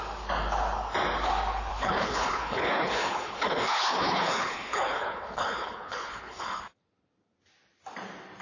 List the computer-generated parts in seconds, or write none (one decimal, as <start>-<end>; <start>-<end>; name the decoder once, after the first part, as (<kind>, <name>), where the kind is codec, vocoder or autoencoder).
1.7-6.6 (codec, HILCodec)